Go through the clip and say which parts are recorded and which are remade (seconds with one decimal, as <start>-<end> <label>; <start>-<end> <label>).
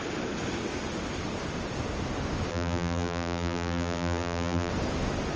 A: 0.0-2.5 recorded; 2.5-4.7 remade; 4.7-5.4 recorded